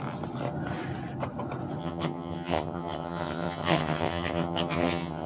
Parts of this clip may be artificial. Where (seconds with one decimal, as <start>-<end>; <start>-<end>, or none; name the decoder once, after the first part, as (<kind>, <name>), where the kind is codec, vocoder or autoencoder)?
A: 1.8-5.3 (vocoder, HiFi-GAN)